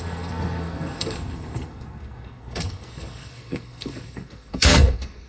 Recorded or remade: remade